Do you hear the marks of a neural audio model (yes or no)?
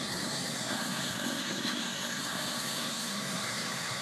yes